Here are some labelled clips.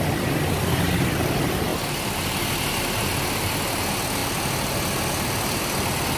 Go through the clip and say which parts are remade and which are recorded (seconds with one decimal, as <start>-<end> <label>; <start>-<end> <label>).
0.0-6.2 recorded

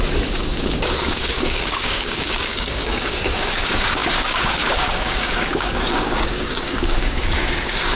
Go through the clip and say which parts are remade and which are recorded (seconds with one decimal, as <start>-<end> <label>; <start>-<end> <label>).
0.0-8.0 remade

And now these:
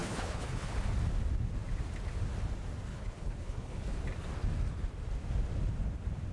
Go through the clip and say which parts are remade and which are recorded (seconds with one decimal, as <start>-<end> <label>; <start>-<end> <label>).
0.0-0.7 remade; 0.7-2.9 recorded; 2.9-4.0 remade; 4.0-6.3 recorded

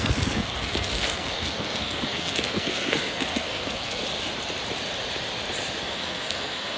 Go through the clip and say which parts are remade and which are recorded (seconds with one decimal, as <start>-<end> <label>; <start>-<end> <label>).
0.0-4.0 remade; 4.0-5.8 recorded; 5.8-6.8 remade

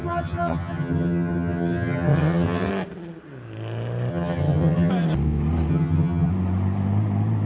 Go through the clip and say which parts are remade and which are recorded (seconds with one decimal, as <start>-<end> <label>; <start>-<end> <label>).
0.0-2.7 remade; 2.7-4.1 recorded; 4.1-4.9 remade; 4.9-5.7 recorded; 5.7-6.3 remade; 6.3-7.5 recorded